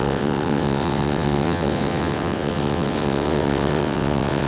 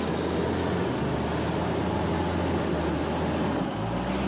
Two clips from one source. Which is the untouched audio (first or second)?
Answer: second